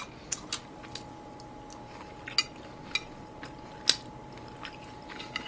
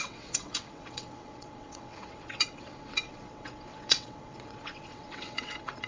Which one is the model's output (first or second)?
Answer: second